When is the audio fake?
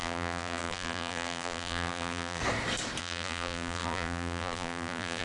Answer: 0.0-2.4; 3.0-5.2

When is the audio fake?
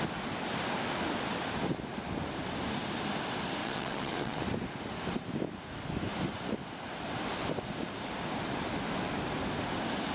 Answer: 3.6-4.4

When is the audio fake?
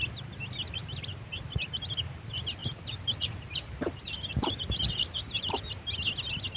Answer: 0.8-2.0; 2.6-5.6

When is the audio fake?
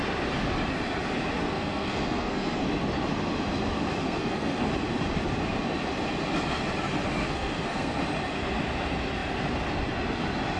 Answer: 1.4-2.6; 4.0-4.7; 7.2-8.0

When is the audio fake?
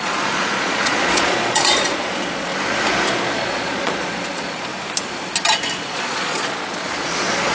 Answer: 0.0-2.5; 3.1-4.7; 5.8-7.5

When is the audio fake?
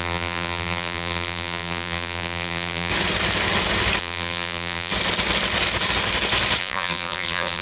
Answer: 0.0-2.9; 4.0-4.9; 6.6-7.6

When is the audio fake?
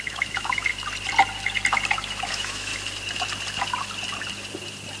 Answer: 0.0-0.7; 2.3-2.7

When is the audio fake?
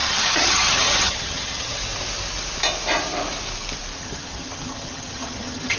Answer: 0.0-1.8; 4.0-5.8